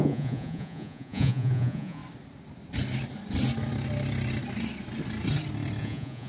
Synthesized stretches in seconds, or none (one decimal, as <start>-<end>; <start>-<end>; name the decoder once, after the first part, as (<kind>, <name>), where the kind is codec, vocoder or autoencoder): 0.0-2.0 (vocoder, Vocos); 5.8-6.3